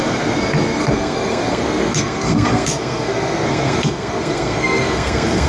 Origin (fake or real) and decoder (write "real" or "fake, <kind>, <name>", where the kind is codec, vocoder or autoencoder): fake, codec, SNAC